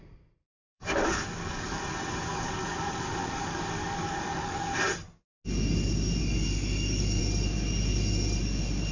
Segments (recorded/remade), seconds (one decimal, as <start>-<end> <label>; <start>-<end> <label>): 0.0-0.7 recorded; 0.7-1.8 remade; 1.8-2.3 recorded; 2.3-4.7 remade; 4.7-6.2 recorded; 6.2-7.2 remade; 7.2-8.9 recorded